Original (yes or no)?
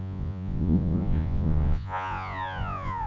no